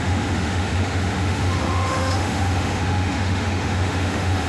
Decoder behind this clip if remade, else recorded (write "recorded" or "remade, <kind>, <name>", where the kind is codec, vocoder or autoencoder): remade, autoencoder, DAC-VAE